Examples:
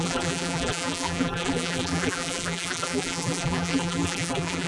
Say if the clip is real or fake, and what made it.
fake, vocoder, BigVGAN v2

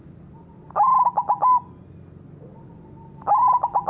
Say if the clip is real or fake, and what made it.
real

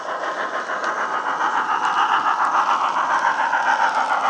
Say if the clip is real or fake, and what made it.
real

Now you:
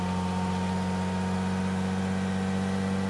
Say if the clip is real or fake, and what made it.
real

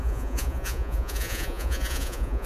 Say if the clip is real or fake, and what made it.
fake, vocoder, Vocos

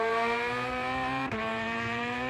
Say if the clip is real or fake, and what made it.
fake, vocoder, BigVGAN v2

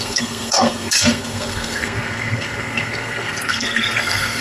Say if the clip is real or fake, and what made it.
fake, codec, SNAC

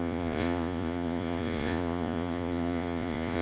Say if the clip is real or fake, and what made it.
fake, vocoder, Vocos